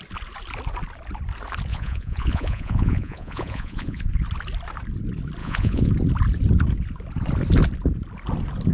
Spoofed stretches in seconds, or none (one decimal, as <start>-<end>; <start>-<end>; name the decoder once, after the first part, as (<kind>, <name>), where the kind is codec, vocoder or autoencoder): 1.7-4.1 (vocoder, Vocos); 5.4-5.9

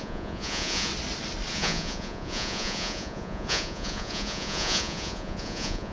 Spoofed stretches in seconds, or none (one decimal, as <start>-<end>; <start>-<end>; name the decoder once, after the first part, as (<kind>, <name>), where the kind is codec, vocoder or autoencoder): 0.0-0.9 (vocoder, Vocos); 1.5-5.9

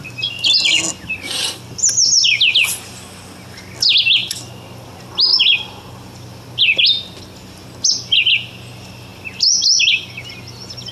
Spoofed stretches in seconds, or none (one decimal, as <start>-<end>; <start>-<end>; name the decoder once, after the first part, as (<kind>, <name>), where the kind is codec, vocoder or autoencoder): none

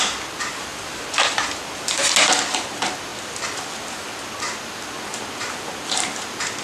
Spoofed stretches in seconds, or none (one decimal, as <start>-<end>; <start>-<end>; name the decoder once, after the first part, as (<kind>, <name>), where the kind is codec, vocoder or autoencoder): none